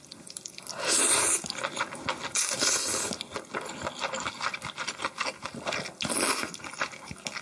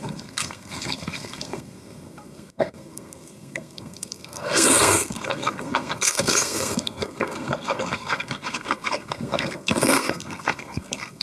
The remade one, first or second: second